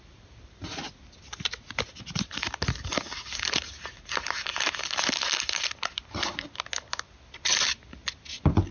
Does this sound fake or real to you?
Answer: real